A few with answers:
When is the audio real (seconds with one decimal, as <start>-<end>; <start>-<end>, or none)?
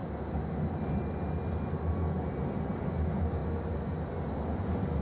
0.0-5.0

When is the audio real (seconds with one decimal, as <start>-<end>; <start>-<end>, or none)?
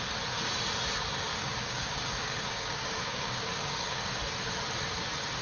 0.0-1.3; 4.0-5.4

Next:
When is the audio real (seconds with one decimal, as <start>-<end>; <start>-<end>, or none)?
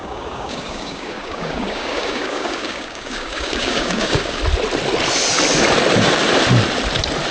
4.4-7.3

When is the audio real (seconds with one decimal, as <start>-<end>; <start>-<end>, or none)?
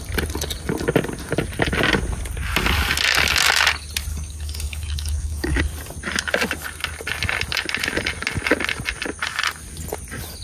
0.0-4.1; 5.6-10.4